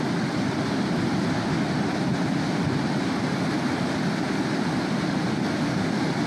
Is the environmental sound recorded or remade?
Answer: recorded